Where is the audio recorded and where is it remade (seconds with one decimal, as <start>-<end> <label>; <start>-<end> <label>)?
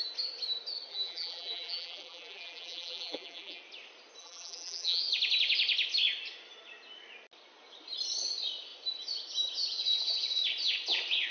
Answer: 0.0-0.9 recorded; 0.9-3.6 remade; 3.6-4.2 recorded; 4.2-5.0 remade; 5.0-11.3 recorded